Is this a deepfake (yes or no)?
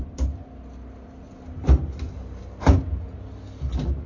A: no